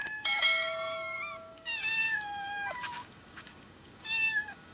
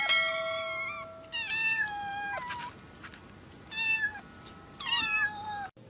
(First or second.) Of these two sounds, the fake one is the first